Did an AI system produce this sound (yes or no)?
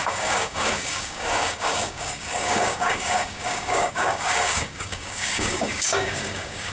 yes